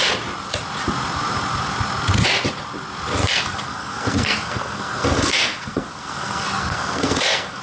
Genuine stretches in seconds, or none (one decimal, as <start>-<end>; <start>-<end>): 0.0-3.2